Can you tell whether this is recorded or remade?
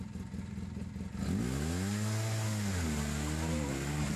recorded